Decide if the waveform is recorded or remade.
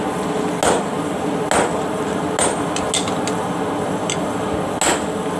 recorded